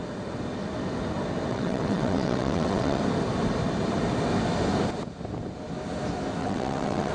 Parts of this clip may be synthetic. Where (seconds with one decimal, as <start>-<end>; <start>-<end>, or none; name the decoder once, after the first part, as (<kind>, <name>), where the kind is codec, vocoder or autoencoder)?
1.5-3.0 (vocoder, WaveNeXt); 6.4-7.1